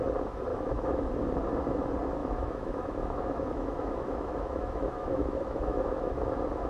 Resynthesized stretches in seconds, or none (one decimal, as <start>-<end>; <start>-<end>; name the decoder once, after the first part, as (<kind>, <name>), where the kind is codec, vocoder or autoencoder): 0.5-1.1 (autoencoder, DAC-VAE); 2.2-6.2